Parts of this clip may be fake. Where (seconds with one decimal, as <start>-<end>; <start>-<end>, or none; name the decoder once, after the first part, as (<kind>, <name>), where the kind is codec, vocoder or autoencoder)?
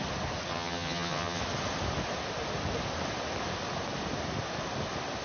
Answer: 0.5-1.4 (vocoder, HiFi-GAN)